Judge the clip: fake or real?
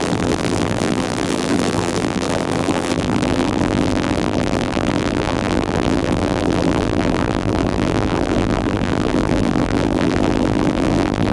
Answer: fake